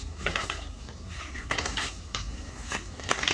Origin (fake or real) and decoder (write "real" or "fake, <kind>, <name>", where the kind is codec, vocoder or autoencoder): fake, codec, SNAC